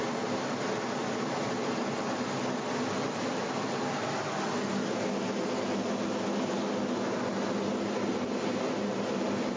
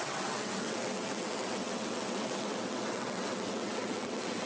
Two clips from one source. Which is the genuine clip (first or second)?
first